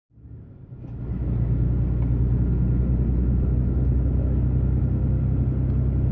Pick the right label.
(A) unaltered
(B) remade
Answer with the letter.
A